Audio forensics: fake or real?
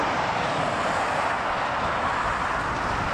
real